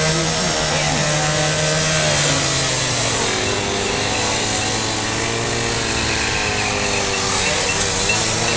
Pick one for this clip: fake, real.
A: real